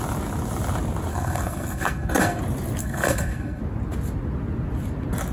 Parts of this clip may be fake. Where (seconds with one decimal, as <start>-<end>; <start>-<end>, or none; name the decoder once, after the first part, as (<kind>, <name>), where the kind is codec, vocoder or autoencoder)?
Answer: 1.1-2.4 (codec, SNAC); 2.8-3.6